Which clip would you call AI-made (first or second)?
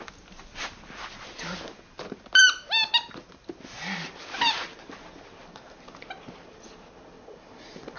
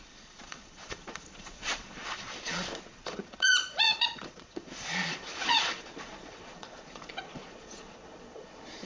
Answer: second